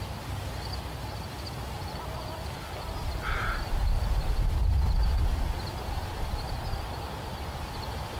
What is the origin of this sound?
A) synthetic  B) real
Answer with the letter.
B